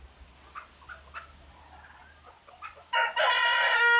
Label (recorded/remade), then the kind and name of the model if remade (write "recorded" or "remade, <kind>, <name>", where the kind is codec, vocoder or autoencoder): recorded